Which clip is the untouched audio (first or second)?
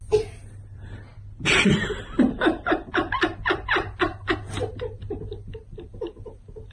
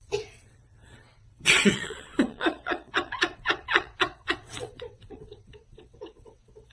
first